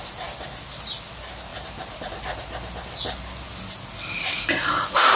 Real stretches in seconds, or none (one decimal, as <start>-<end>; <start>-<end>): 0.0-5.1